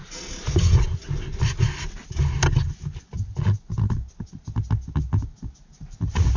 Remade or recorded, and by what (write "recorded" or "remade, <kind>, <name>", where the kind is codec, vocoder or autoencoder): recorded